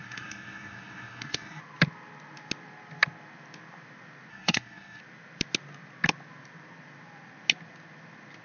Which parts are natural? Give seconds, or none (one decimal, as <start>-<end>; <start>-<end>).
1.6-4.3; 5.0-8.4

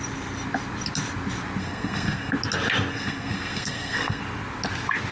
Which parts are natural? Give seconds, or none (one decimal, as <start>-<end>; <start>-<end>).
0.0-1.6; 2.3-2.9; 4.2-5.1

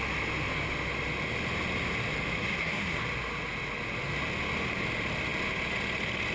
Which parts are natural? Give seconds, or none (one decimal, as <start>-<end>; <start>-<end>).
0.0-2.4; 3.0-6.3

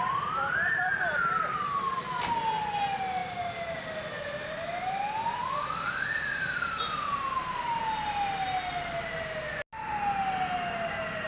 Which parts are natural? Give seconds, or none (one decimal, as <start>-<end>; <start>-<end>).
0.0-11.3

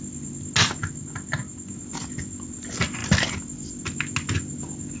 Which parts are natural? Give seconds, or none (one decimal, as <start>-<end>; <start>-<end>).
0.0-5.0

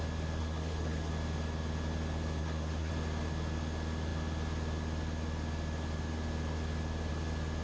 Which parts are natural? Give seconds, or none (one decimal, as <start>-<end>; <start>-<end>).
0.0-0.4; 1.1-2.4; 2.9-7.6

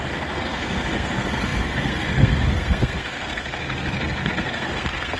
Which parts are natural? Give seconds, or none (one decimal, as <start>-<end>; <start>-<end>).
none